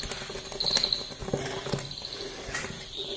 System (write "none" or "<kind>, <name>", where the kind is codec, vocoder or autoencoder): none